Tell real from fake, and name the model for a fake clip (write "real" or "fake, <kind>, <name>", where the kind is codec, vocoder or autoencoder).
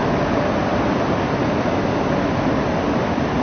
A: real